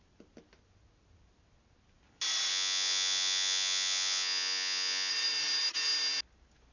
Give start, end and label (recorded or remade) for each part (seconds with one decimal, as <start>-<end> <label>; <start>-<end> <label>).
0.0-2.5 recorded; 2.5-5.1 remade; 5.1-6.7 recorded